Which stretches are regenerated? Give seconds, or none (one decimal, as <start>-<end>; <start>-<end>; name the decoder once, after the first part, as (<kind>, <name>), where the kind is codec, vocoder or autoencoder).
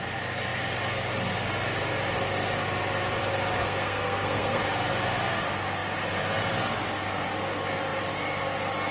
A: 3.6-4.6 (codec, SNAC)